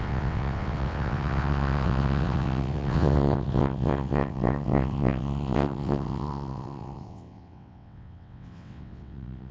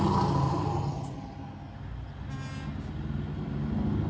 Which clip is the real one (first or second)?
second